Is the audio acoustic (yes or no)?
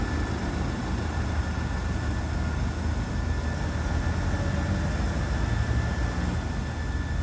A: yes